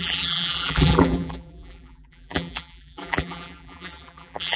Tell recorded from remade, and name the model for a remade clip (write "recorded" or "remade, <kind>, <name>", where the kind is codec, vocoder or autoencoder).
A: remade, vocoder, BigVGAN v2